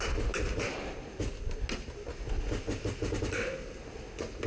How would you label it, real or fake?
real